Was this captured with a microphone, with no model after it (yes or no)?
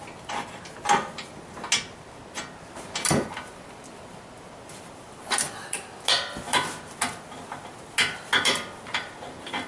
yes